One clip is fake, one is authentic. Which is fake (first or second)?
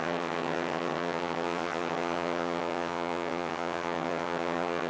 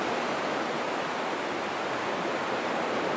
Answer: first